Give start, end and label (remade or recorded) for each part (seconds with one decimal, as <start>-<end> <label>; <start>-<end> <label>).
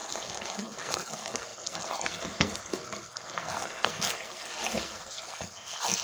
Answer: 0.0-6.0 remade